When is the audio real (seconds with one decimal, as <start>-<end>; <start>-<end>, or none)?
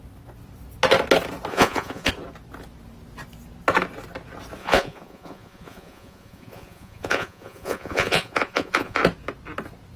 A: 0.0-1.5; 2.1-4.6; 9.0-10.0